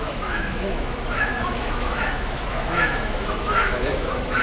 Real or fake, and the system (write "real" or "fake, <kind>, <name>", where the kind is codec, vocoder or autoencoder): fake, autoencoder, DAC-VAE